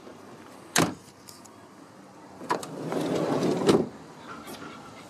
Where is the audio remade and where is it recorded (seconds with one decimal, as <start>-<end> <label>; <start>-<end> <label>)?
0.0-5.1 remade

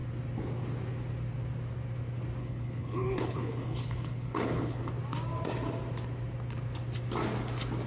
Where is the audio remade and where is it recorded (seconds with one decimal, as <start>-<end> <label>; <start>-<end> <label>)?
0.0-2.4 recorded; 2.4-4.9 remade; 4.9-7.9 recorded